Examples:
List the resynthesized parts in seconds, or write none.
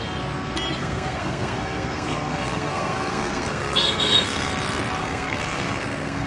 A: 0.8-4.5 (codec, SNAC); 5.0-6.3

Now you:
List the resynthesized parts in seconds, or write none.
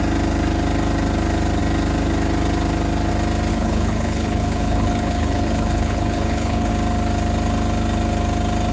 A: 3.5-6.7 (codec, HILCodec)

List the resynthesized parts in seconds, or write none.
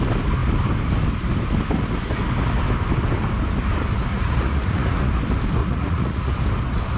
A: 4.1-5.1 (vocoder, Vocos); 5.6-6.3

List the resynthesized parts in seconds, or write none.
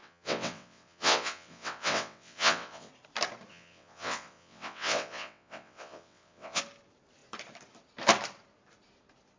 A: 0.0-2.9 (vocoder, WaveNeXt); 3.5-6.6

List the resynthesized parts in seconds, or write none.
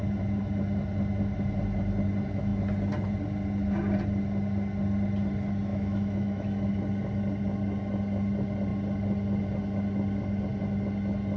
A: 5.7-6.7 (autoencoder, DAC-VAE)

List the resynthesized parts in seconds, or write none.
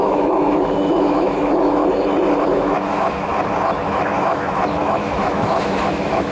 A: 0.0-1.8 (autoencoder, DAC-VAE); 2.4-3.3; 3.8-6.3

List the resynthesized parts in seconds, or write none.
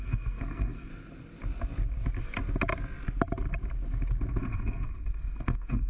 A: 0.0-0.9 (codec, SNAC); 4.4-5.9